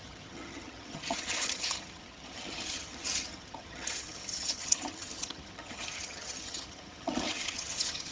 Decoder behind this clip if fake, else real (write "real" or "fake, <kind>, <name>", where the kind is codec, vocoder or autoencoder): fake, vocoder, HiFi-GAN